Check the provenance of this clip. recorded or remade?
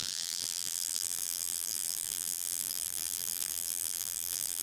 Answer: remade